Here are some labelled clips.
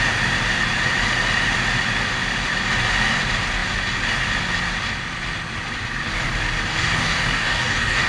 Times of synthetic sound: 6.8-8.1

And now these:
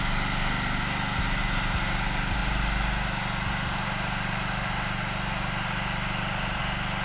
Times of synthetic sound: 2.4-6.6

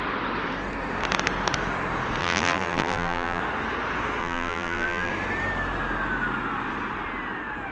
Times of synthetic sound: 2.2-3.4; 4.2-5.1

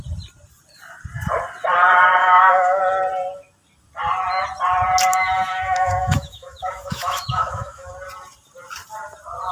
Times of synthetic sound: 2.2-2.8; 5.1-7.9

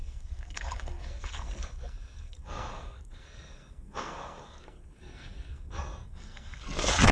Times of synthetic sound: 0.0-7.1